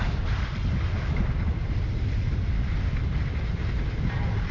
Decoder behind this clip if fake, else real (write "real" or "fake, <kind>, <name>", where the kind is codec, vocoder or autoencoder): real